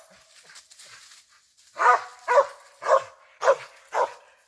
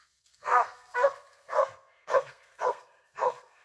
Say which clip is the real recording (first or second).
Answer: first